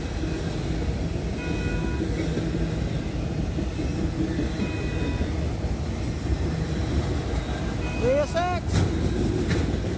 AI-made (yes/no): no